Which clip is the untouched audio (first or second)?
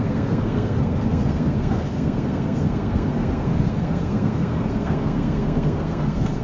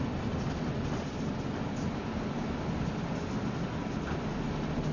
second